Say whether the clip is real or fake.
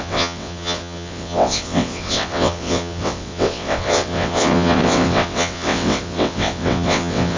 fake